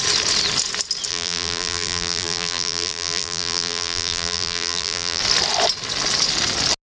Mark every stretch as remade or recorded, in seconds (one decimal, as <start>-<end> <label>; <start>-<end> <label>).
0.0-1.1 recorded; 1.1-5.2 remade; 5.2-6.9 recorded